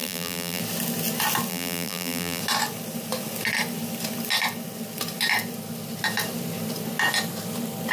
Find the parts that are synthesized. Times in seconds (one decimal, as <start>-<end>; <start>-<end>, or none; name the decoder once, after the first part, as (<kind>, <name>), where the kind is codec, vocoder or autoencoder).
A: 0.0-0.6 (vocoder, BigVGAN v2); 1.5-2.4